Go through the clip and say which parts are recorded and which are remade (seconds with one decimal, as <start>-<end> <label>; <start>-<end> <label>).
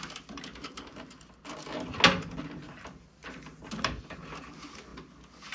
0.0-0.5 recorded; 0.5-1.5 remade; 1.5-5.5 recorded